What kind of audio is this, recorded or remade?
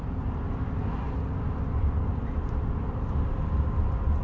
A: recorded